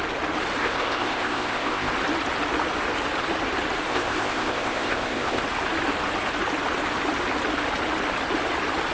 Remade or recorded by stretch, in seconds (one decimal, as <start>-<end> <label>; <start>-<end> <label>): 0.0-0.6 recorded; 0.6-1.9 remade; 1.9-3.9 recorded; 3.9-5.4 remade; 5.4-8.9 recorded